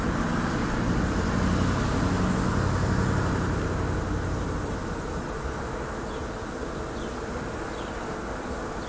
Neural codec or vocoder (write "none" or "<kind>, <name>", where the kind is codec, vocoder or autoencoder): none